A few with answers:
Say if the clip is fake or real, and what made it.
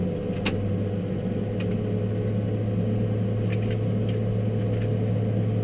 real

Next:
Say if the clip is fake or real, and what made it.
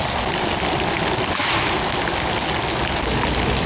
real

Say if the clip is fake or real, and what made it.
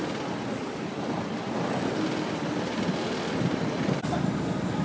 real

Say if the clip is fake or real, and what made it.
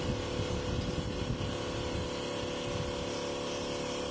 real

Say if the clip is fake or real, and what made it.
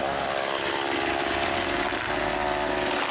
real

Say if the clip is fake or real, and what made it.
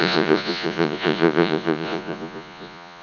fake, vocoder, Vocos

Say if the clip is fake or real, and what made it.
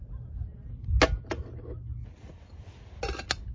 real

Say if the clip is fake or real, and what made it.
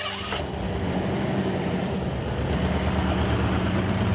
real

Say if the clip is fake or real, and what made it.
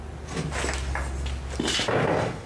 real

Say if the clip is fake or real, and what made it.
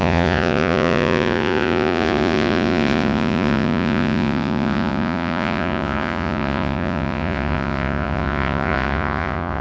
fake, vocoder, Vocos